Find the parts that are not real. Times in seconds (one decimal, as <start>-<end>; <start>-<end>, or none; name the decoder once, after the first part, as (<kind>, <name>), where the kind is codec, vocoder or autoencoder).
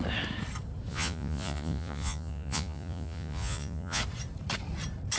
0.9-4.0 (vocoder, Vocos)